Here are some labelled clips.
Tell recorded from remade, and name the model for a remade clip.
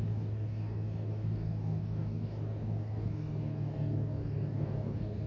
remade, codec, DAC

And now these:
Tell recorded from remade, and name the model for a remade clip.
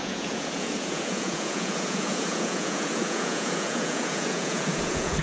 remade, vocoder, Vocos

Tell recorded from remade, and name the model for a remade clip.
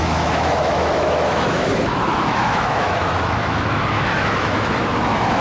remade, autoencoder, DAC-VAE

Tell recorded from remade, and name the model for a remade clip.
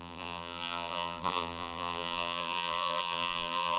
remade, vocoder, BigVGAN v2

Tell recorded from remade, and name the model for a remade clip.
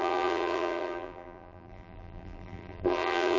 remade, vocoder, BigVGAN v2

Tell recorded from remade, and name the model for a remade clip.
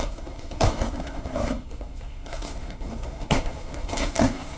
remade, codec, SNAC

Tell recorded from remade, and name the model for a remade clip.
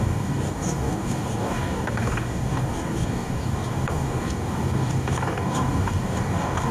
remade, codec, DAC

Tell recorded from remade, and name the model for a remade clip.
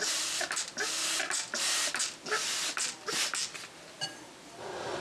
recorded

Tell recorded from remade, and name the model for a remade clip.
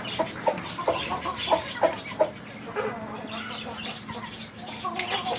recorded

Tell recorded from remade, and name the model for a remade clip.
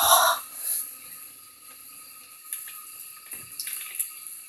recorded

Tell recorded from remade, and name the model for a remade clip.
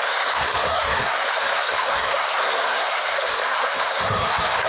remade, codec, SNAC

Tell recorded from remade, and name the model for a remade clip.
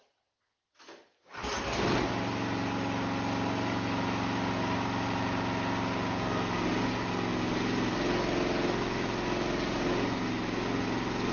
recorded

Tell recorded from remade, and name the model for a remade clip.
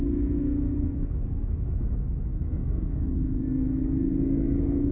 remade, codec, SNAC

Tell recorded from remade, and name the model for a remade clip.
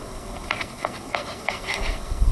remade, codec, SNAC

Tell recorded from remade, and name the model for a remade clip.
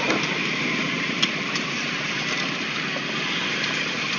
remade, vocoder, BigVGAN v2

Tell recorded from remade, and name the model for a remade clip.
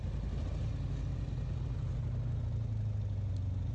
recorded